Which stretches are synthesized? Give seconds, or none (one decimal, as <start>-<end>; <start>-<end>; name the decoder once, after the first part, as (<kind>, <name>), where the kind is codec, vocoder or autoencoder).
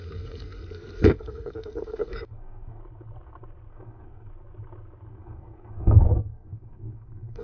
0.0-2.8 (codec, SNAC); 3.7-4.3; 5.1-7.4